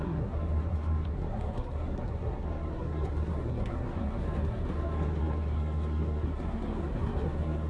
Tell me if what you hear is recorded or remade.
remade